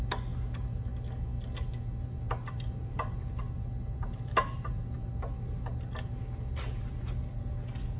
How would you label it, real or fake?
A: real